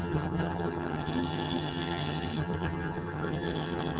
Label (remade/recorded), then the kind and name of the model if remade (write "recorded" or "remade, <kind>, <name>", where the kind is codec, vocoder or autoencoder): remade, vocoder, HiFi-GAN